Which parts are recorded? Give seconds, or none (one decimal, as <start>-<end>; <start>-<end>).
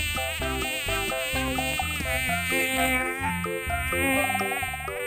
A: 0.0-2.6; 3.3-5.1